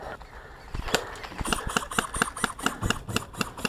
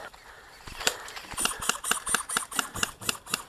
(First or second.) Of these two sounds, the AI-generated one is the second